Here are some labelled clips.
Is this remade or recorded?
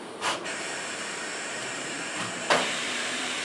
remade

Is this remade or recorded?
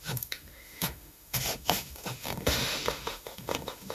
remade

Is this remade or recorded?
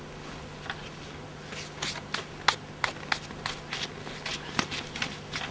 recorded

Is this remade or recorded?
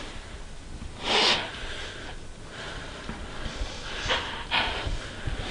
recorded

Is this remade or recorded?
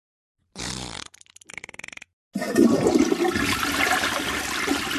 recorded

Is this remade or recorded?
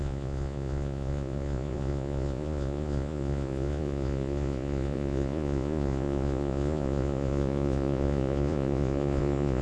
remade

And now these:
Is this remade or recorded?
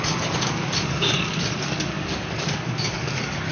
remade